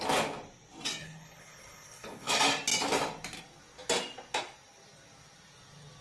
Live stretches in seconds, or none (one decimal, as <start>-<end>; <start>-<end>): 0.0-1.0; 2.3-6.0